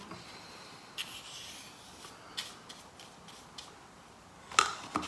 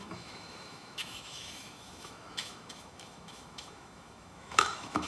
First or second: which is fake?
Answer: second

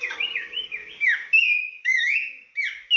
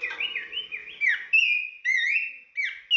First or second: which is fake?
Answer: first